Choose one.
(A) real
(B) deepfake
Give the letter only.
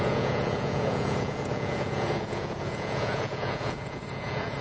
B